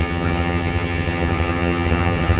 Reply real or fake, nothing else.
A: fake